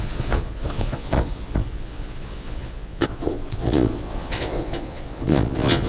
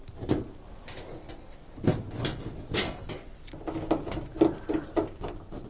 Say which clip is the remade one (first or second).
first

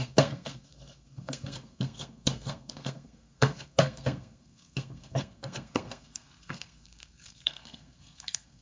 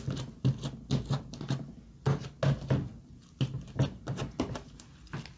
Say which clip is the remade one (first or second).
first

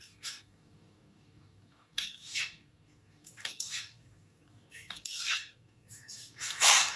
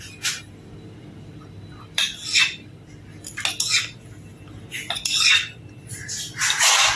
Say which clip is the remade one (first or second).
first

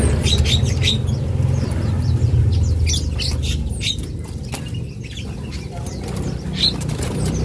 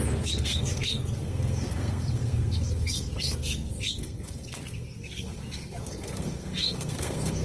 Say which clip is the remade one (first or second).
second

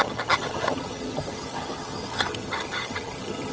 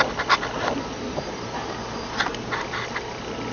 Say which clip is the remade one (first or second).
first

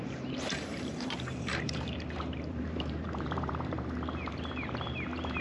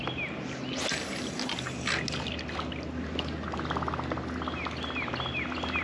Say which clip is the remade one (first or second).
first